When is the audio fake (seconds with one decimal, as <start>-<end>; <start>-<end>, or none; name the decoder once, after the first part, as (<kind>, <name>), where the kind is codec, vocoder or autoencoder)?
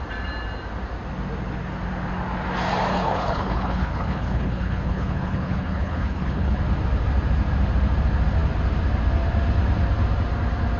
2.9-6.6 (codec, HILCodec)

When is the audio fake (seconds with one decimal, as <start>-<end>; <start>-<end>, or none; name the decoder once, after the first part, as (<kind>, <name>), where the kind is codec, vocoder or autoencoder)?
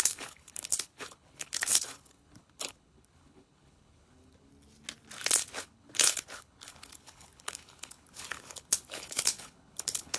0.0-4.5 (codec, HILCodec); 5.6-10.2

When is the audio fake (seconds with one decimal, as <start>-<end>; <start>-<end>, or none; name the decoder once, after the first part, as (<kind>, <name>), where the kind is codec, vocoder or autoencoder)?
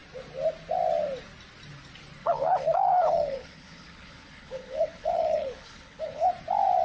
2.2-6.3 (codec, HILCodec)